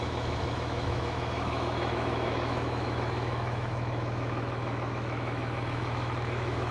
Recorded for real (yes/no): no